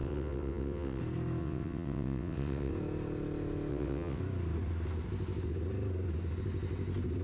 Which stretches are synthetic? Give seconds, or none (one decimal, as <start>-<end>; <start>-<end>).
0.0-1.0; 1.4-2.7; 3.7-4.2

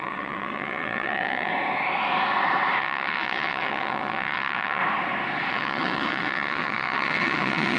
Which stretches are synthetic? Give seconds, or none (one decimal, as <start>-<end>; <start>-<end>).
0.0-1.5; 2.8-4.8; 5.5-7.8

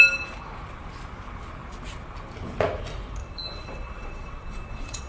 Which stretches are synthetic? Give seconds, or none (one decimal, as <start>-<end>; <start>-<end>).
3.2-5.1

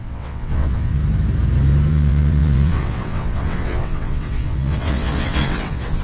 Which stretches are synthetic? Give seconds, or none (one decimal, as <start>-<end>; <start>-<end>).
0.0-1.0; 1.9-6.0

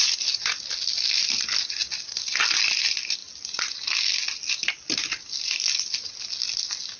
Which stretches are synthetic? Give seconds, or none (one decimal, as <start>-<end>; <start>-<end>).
none

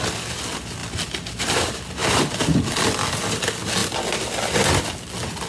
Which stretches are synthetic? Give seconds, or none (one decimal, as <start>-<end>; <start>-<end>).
none